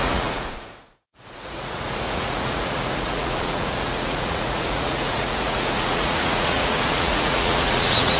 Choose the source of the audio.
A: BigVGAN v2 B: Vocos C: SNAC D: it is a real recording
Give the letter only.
B